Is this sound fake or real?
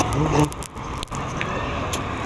real